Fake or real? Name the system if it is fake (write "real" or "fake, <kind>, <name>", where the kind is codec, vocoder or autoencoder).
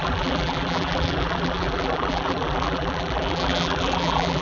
fake, vocoder, BigVGAN v2